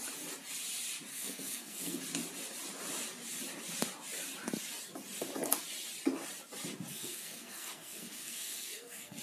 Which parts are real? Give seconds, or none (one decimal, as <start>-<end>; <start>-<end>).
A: 0.0-1.1; 2.0-6.9